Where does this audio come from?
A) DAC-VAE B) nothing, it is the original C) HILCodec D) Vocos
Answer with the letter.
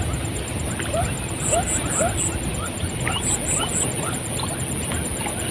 B